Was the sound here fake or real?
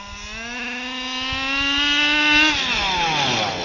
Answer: real